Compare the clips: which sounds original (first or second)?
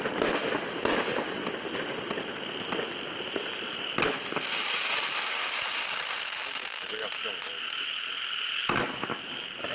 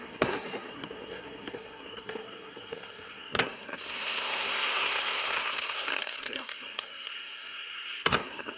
first